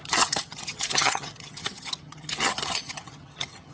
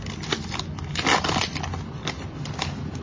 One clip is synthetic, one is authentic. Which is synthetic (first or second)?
first